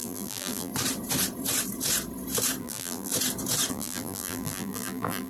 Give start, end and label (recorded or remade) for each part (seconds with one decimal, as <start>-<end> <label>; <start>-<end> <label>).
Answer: 0.0-0.7 remade; 0.7-2.6 recorded; 2.6-3.1 remade; 3.1-3.7 recorded; 3.7-5.3 remade